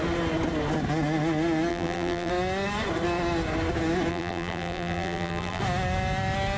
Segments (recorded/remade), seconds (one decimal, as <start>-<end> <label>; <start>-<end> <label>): 0.0-1.7 recorded; 1.7-2.3 remade; 2.3-4.1 recorded; 4.1-5.6 remade; 5.6-6.6 recorded